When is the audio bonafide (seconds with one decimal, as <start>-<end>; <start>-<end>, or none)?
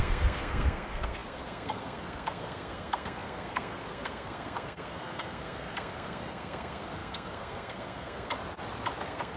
8.3-9.0